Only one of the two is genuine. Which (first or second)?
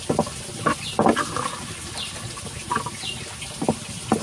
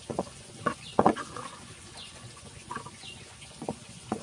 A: first